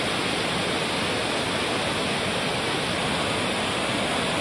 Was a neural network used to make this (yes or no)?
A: no